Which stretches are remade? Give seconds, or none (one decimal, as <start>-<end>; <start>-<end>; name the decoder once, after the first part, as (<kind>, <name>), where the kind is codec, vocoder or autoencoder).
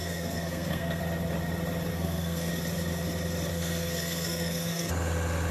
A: 0.0-1.0 (codec, SNAC); 1.9-2.5; 3.5-4.9